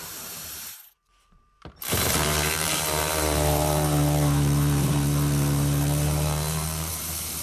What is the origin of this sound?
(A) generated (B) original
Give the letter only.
A